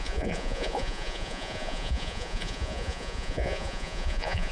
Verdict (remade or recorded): remade